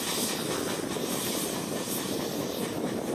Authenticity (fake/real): fake